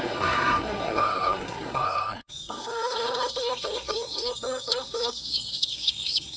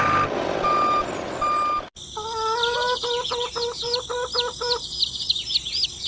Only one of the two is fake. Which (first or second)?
first